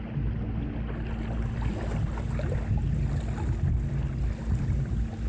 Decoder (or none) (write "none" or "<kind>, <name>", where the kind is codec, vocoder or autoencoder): none